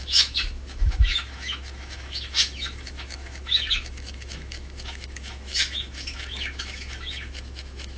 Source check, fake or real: fake